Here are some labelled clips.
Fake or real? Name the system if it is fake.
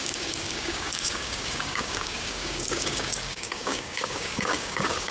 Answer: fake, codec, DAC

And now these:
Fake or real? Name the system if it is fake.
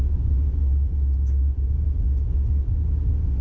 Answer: real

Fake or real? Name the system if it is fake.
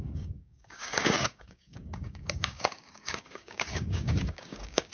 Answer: fake, codec, DAC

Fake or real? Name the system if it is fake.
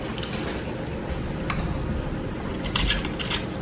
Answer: real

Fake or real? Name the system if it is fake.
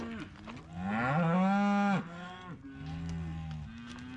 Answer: real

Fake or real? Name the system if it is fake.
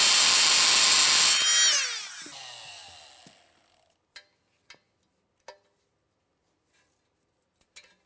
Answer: real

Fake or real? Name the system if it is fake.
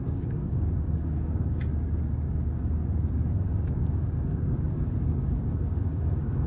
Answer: fake, codec, DAC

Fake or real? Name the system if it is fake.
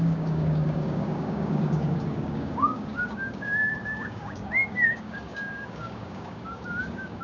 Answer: fake, codec, DAC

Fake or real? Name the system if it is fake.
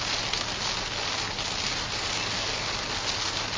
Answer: real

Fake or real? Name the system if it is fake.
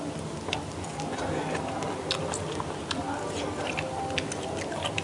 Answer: real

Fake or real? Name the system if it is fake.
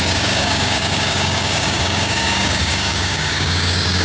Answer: fake, codec, DAC